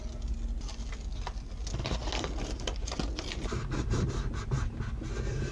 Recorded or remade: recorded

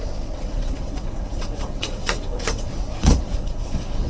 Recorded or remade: remade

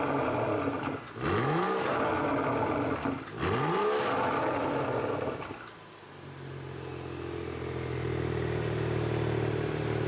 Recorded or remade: recorded